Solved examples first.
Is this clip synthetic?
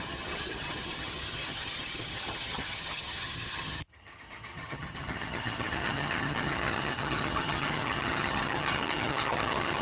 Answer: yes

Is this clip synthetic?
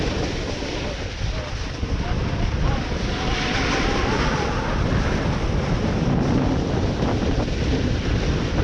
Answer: no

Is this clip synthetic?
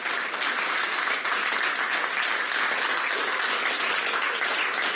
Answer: no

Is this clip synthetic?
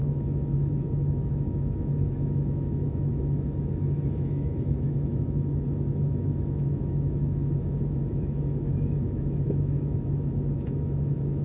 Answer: yes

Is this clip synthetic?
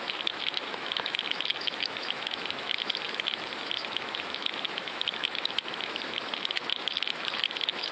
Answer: yes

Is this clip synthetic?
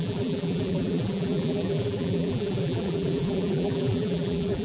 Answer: yes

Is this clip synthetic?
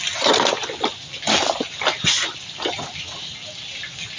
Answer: no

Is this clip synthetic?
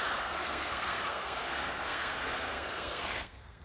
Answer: yes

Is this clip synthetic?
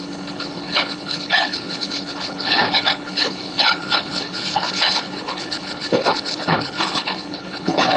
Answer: yes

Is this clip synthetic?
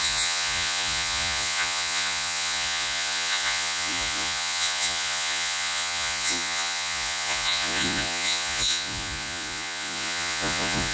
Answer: yes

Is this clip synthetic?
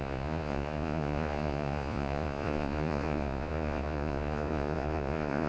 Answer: yes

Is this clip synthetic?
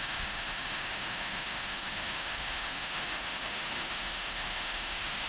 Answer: yes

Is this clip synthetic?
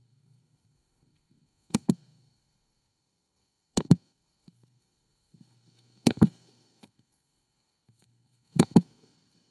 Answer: yes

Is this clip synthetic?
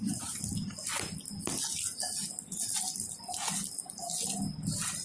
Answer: no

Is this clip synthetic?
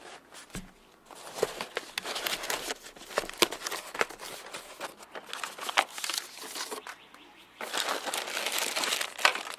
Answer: no